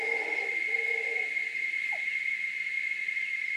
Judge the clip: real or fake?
real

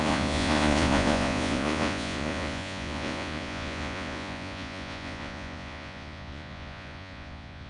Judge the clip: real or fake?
fake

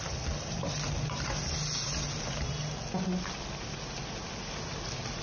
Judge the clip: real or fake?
real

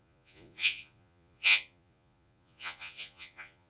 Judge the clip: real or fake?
fake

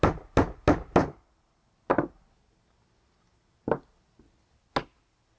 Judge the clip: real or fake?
real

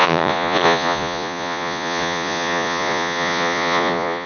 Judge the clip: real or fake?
fake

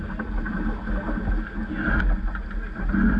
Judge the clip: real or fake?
real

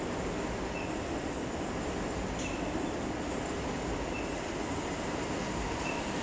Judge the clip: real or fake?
real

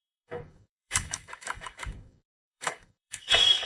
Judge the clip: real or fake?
fake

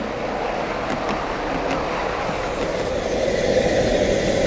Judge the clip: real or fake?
real